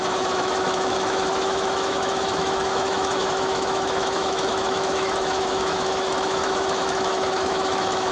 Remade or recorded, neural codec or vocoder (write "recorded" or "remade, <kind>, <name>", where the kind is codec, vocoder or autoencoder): remade, autoencoder, DAC-VAE